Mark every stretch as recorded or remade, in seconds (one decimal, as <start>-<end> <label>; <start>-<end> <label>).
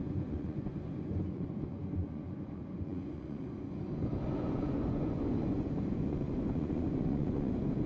0.0-7.9 remade